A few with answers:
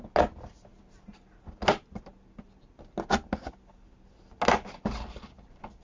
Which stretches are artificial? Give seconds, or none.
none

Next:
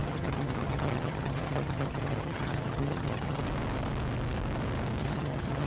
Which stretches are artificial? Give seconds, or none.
0.0-3.4 (vocoder, HiFi-GAN); 5.0-5.7